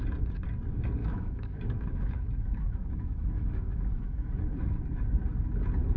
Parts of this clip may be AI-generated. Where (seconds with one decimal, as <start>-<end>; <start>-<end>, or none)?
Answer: 1.0-4.6